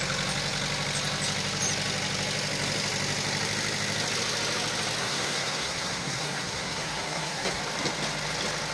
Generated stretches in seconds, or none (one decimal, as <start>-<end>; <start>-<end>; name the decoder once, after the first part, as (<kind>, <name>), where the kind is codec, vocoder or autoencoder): 5.0-7.6 (codec, SNAC)